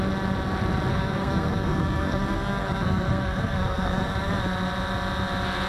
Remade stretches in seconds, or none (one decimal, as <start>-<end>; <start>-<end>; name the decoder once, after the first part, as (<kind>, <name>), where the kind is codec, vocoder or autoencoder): 0.9-4.3 (codec, SNAC)